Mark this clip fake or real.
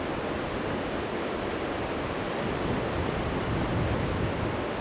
real